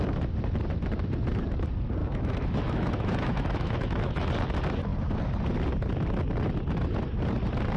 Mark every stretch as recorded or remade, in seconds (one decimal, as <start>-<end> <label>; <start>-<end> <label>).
0.0-2.0 recorded; 2.0-4.3 remade; 4.3-7.8 recorded